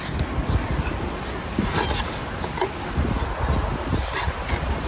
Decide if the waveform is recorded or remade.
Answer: recorded